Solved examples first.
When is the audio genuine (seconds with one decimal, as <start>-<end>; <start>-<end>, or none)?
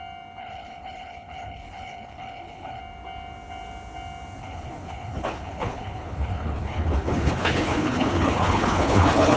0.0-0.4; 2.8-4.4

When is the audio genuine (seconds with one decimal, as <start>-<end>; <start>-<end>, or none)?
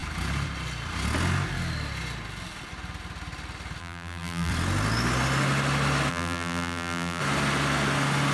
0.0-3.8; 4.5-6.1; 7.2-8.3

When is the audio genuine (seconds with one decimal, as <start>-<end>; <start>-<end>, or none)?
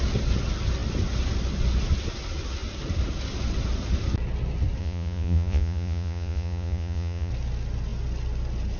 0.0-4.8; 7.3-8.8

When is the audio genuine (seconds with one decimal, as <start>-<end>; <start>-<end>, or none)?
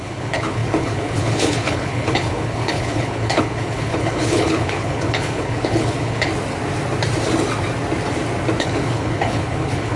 6.3-8.6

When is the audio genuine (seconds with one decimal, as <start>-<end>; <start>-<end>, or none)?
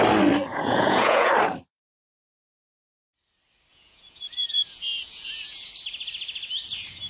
0.0-0.5; 1.3-3.7; 5.7-7.1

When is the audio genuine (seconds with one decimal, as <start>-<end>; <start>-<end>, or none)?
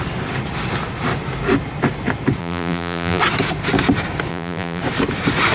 0.0-2.4; 3.2-4.3; 4.8-5.5